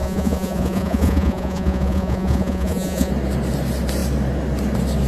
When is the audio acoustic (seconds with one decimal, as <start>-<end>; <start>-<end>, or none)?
3.1-5.1